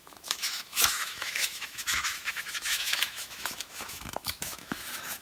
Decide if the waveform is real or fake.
fake